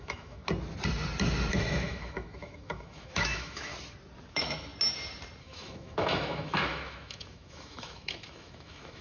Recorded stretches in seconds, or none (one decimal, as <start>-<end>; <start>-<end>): 0.4-1.5; 3.7-4.3; 4.7-5.4